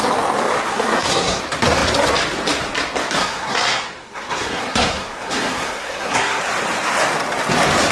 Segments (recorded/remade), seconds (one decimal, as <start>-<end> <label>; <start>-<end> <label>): 0.0-0.7 recorded; 0.7-1.4 remade; 1.4-3.2 recorded; 3.2-6.4 remade; 6.4-7.9 recorded